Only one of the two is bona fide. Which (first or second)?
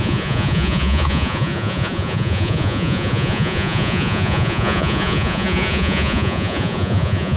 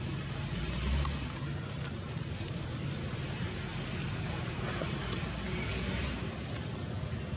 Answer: second